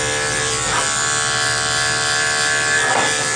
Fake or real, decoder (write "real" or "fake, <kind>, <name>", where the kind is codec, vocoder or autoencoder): fake, vocoder, BigVGAN v2